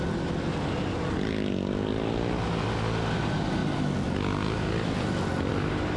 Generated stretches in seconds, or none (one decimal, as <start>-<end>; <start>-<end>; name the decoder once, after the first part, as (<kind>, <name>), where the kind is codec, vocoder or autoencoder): none